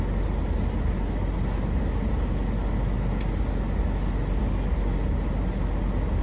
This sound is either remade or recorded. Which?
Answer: recorded